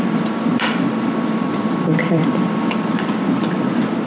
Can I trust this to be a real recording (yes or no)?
no